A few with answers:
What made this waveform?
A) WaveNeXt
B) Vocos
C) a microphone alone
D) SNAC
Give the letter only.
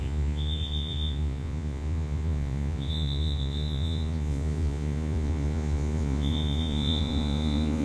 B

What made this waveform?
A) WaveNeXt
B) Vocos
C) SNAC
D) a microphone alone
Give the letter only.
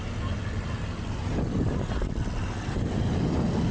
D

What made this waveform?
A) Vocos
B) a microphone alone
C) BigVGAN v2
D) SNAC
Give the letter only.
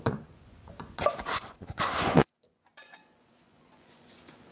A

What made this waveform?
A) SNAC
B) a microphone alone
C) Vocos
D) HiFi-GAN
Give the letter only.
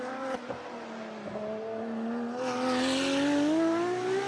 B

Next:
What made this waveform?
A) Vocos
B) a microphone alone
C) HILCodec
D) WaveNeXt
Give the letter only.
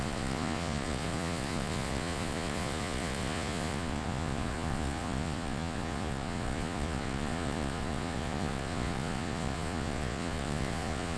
A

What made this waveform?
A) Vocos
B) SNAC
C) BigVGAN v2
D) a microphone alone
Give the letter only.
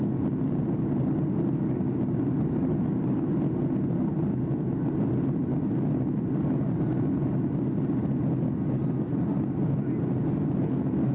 D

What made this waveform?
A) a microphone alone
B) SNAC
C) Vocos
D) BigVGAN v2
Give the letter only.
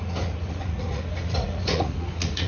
C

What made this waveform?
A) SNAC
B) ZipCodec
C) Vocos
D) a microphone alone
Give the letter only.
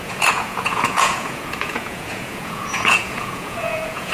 C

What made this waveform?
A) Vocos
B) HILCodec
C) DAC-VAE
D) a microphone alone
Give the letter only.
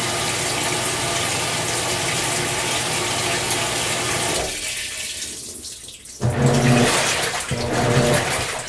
D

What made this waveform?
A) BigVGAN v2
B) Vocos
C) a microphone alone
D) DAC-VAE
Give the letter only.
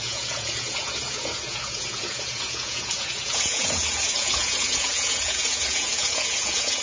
B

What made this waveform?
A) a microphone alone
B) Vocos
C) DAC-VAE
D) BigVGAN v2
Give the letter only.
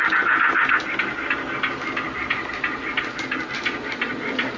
A